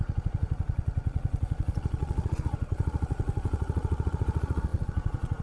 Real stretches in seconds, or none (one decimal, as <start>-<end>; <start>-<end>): none